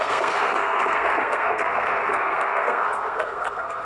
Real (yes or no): no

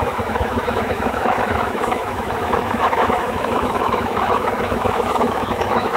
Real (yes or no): no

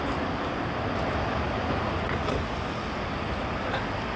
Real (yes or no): yes